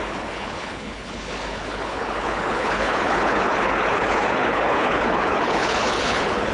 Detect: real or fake fake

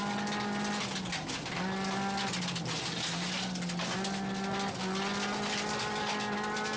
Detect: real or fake real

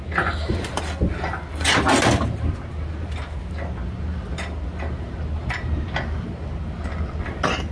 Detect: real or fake real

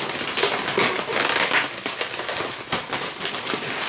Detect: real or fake real